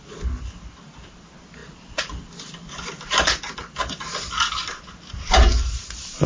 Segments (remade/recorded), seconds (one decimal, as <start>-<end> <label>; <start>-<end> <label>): 0.0-6.3 recorded

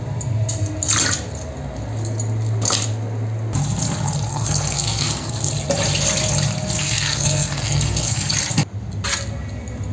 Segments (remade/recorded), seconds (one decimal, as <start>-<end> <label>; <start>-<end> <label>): 0.0-4.3 recorded; 4.3-5.5 remade; 5.5-6.8 recorded; 6.8-8.3 remade; 8.3-9.9 recorded

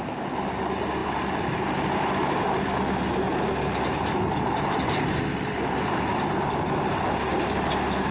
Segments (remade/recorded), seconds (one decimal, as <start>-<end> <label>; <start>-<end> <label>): 0.0-8.1 recorded